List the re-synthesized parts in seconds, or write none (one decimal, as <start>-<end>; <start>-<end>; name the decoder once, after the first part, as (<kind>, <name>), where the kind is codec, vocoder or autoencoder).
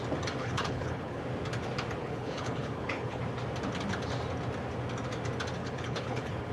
0.4-1.2 (codec, HILCodec); 2.0-3.2; 5.6-6.5